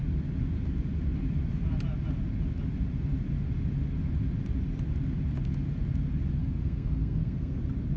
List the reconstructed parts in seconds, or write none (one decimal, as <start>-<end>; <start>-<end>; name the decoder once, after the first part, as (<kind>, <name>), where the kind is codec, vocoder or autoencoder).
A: 6.4-7.6 (codec, SNAC)